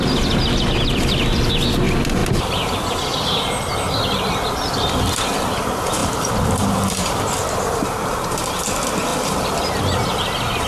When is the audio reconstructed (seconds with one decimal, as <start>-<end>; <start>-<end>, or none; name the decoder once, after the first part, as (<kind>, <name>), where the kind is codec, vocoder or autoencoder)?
2.2-3.5 (vocoder, BigVGAN v2); 6.0-8.4; 9.1-9.8